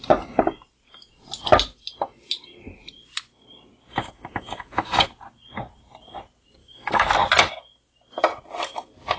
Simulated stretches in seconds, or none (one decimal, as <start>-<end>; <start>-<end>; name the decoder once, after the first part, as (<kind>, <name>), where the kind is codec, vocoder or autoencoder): 3.9-4.9 (autoencoder, DAC-VAE); 6.6-7.1